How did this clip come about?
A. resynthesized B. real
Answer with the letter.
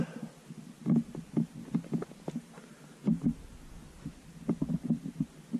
B